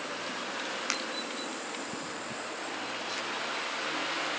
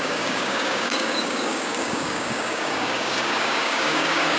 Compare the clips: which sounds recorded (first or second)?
first